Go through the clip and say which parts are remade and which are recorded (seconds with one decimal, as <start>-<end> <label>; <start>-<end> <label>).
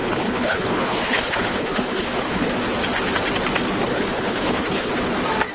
0.0-2.5 remade; 2.5-3.8 recorded; 3.8-4.9 remade; 4.9-5.5 recorded